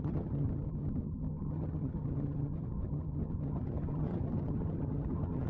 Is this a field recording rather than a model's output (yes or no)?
no